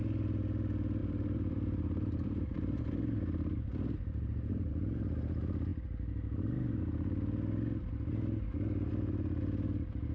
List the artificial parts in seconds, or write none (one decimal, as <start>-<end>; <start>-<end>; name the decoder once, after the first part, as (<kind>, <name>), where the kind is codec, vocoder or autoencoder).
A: 1.0-4.7 (vocoder, BigVGAN v2)